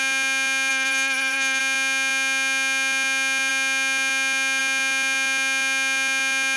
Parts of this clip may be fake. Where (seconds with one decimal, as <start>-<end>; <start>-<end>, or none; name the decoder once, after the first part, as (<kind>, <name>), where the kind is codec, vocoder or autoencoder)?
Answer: 0.7-1.6 (vocoder, BigVGAN v2)